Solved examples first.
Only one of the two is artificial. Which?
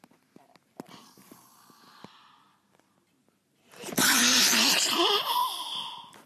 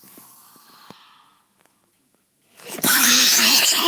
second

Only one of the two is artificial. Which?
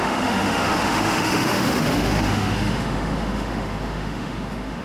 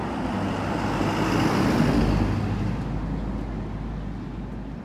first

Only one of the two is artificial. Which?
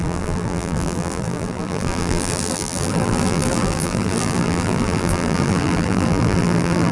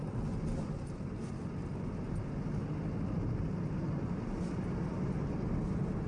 first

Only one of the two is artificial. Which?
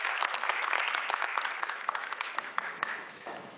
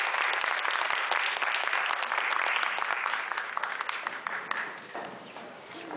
first